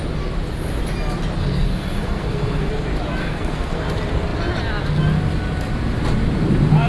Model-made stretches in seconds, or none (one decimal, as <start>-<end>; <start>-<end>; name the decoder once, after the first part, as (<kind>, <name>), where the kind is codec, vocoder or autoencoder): 1.4-2.7 (codec, SNAC); 3.2-3.8